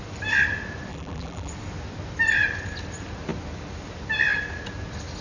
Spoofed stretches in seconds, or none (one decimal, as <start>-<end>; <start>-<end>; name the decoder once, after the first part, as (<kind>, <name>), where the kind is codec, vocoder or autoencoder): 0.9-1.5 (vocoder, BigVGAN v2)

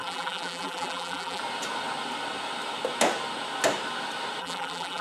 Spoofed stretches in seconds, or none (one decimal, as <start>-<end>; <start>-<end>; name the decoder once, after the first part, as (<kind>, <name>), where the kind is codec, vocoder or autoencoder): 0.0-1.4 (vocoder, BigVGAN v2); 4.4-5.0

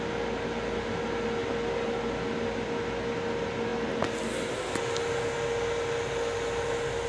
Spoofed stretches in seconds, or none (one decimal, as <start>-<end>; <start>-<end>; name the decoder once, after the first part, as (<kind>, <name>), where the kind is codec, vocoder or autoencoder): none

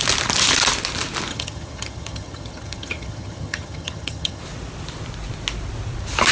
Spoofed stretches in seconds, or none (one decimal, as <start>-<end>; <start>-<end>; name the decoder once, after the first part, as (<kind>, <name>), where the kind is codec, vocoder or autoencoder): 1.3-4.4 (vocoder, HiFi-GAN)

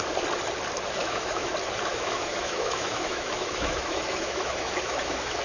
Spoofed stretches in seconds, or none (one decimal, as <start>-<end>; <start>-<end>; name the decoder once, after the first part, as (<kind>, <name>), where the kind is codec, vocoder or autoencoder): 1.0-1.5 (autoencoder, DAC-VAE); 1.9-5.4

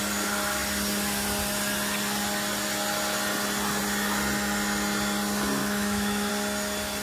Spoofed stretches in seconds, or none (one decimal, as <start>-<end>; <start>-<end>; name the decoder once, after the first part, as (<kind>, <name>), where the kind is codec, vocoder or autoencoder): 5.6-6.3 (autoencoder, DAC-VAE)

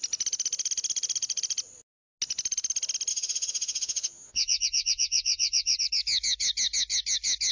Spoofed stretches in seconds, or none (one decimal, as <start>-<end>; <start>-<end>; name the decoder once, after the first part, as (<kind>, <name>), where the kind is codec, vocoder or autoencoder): 3.1-5.8 (vocoder, Vocos)

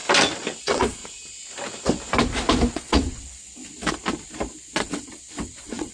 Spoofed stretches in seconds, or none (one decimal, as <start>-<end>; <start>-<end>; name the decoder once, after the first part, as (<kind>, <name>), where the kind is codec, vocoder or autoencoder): 0.6-1.0 (vocoder, WaveNeXt); 2.7-3.6; 4.8-5.9